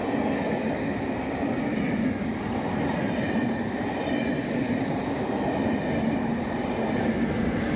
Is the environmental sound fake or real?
real